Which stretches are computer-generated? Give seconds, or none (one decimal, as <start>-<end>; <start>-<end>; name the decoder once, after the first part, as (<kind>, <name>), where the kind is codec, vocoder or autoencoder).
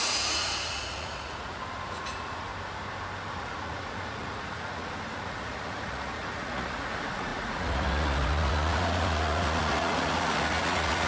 0.0-2.5 (vocoder, Vocos); 3.3-11.1